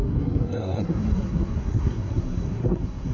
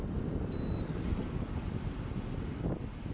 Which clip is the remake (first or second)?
first